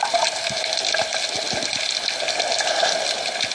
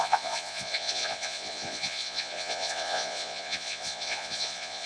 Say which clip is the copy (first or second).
second